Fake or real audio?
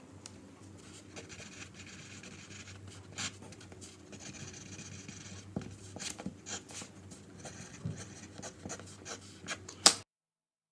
real